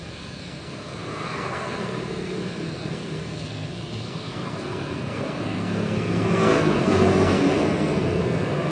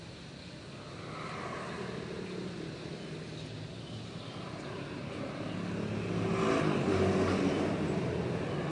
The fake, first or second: first